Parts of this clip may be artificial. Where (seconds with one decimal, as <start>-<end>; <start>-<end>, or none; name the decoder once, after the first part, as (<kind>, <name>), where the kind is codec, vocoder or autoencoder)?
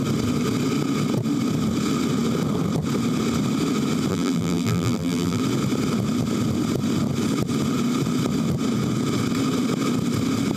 4.1-5.4 (vocoder, BigVGAN v2)